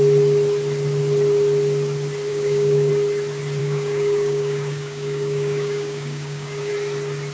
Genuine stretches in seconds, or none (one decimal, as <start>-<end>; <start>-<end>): 0.0-2.3; 2.9-3.6; 6.7-7.3